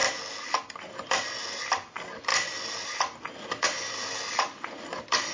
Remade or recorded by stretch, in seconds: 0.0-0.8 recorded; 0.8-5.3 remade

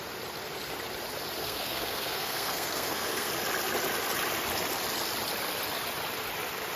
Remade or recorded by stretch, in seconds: 0.0-1.4 recorded; 1.4-3.3 remade; 3.3-6.8 recorded

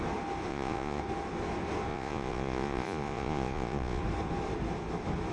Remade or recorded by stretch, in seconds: 0.0-0.5 recorded; 0.5-1.0 remade; 1.0-1.9 recorded; 1.9-4.0 remade; 4.0-5.3 recorded

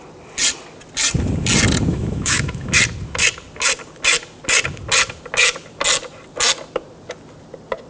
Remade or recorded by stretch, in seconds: 0.0-1.9 recorded; 1.9-2.7 remade; 2.7-7.9 recorded

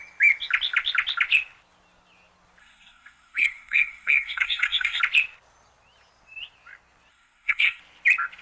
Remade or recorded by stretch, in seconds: 0.0-2.6 recorded; 2.6-5.0 remade; 5.0-7.1 recorded; 7.1-7.8 remade; 7.8-8.4 recorded

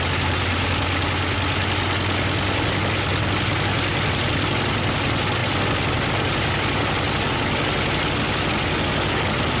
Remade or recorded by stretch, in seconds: 0.0-9.6 recorded